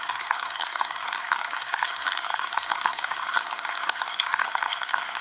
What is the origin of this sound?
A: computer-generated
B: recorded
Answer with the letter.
A